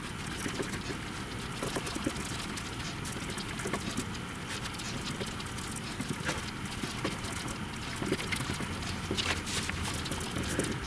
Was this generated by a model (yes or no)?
no